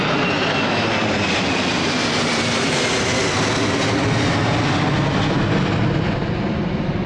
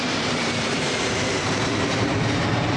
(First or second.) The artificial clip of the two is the second